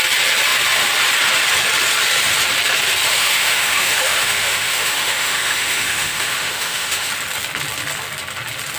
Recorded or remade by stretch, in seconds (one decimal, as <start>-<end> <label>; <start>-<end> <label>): 0.0-3.1 recorded; 3.1-7.1 remade; 7.1-8.8 recorded